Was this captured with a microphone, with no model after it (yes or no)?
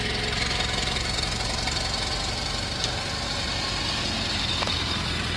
yes